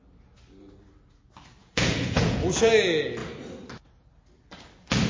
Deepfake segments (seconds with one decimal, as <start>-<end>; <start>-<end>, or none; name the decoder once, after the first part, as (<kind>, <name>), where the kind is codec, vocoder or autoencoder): 1.6-2.7 (vocoder, Vocos)